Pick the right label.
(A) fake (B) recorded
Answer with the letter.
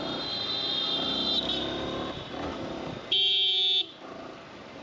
B